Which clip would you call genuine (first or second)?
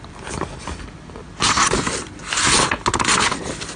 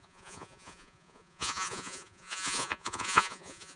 first